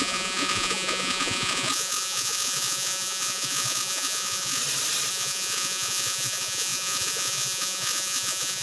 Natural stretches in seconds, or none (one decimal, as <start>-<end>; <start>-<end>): 4.6-5.1